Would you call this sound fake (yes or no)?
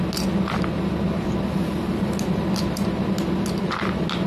no